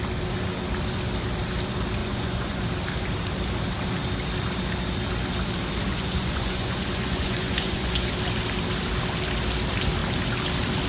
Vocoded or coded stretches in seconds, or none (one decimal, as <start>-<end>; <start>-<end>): 2.0-2.6; 5.9-8.1